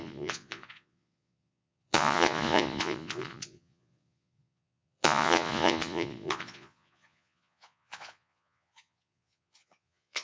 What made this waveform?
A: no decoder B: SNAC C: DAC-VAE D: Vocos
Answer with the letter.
D